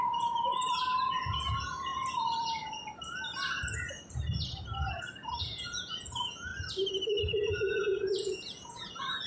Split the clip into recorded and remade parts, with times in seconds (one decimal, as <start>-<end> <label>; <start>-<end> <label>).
0.0-1.9 remade; 1.9-5.4 recorded; 5.4-6.5 remade; 6.5-7.2 recorded; 7.2-9.3 remade

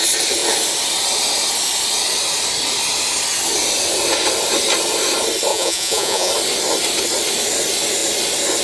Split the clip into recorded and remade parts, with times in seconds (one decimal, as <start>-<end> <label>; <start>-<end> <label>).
0.0-5.5 recorded; 5.5-6.3 remade; 6.3-8.6 recorded

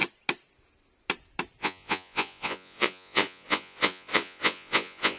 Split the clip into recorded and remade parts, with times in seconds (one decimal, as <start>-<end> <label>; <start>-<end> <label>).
0.0-1.6 recorded; 1.6-5.2 remade

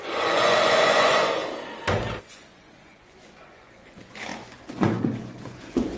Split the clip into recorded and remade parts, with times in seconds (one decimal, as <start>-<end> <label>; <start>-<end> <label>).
0.0-1.4 remade; 1.4-2.2 recorded; 2.2-6.0 remade

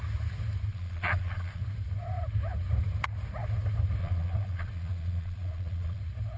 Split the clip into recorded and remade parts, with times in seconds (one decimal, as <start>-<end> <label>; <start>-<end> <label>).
0.0-0.7 recorded; 0.7-1.6 remade; 1.6-4.0 recorded; 4.0-6.0 remade; 6.0-6.4 recorded

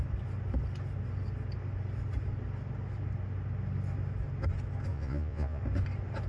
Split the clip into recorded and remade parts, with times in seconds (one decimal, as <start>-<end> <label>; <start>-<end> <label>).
0.0-4.9 recorded; 4.9-5.6 remade; 5.6-6.3 recorded

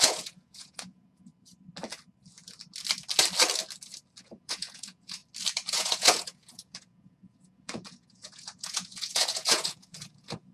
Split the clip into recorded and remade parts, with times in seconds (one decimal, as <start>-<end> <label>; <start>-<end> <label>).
0.0-1.3 remade; 1.3-4.2 recorded; 4.2-5.2 remade; 5.2-5.7 recorded; 5.7-10.5 remade